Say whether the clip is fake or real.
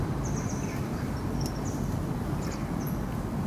real